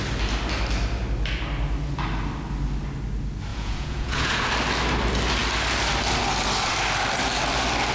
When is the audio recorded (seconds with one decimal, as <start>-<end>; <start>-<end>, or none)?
0.0-3.5; 4.5-7.9